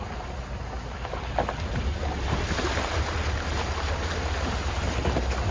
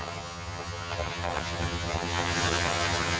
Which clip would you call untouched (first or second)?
first